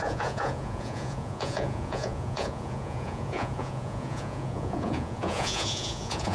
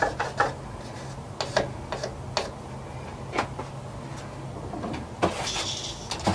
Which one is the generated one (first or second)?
first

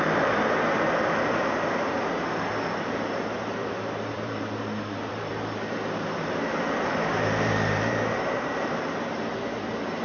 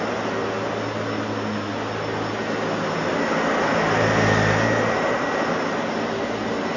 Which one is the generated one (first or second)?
first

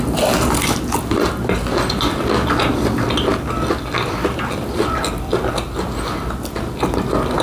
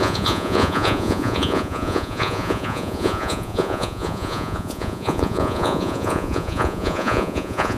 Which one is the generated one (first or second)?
second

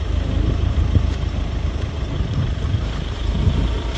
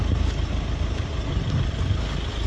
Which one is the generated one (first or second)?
first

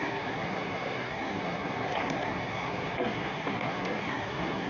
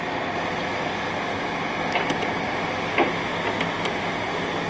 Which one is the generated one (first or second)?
first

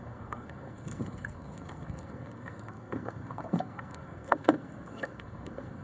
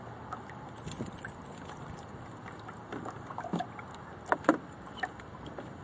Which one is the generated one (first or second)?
first